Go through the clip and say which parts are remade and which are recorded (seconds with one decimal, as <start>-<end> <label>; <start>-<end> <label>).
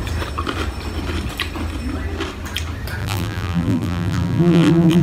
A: 0.0-3.0 recorded; 3.0-5.0 remade